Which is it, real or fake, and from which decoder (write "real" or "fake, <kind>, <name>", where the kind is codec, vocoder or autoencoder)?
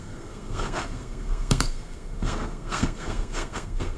fake, codec, SNAC